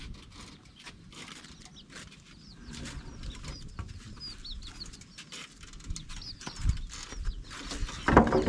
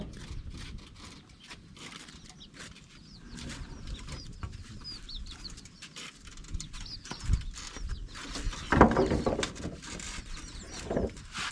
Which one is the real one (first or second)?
first